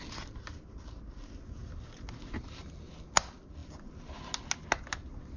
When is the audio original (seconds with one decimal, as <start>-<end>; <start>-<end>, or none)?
0.0-5.4